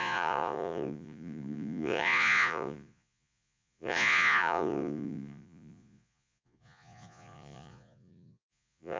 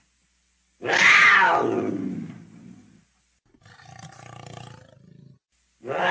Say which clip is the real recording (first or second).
second